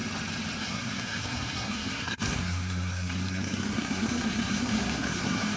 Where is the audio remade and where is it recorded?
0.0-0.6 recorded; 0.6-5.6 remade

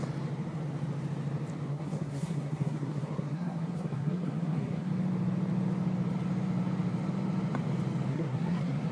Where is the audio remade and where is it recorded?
0.0-1.7 recorded; 1.7-4.9 remade; 4.9-8.1 recorded; 8.1-8.9 remade

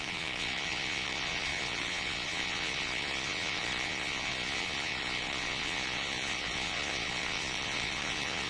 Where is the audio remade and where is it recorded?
0.0-8.5 remade

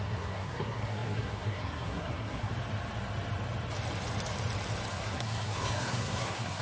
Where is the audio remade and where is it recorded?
0.0-2.5 remade; 2.5-4.9 recorded; 4.9-6.6 remade

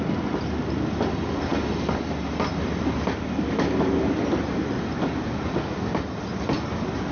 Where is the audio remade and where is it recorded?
0.0-7.1 recorded

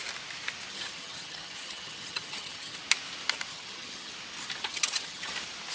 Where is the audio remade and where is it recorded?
0.0-0.7 recorded; 0.7-2.8 remade; 2.8-3.5 recorded; 3.5-4.1 remade; 4.1-4.7 recorded; 4.7-5.3 remade; 5.3-5.7 recorded

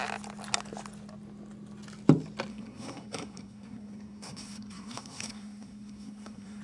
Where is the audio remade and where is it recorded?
0.0-2.5 recorded; 2.5-6.6 remade

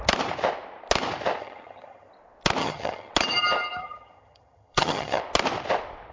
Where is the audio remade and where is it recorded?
0.0-1.4 recorded; 1.4-2.1 remade; 2.1-2.6 recorded; 2.6-3.1 remade; 3.1-3.8 recorded; 3.8-5.2 remade; 5.2-6.1 recorded